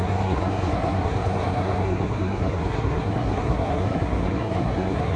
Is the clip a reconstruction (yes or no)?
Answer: yes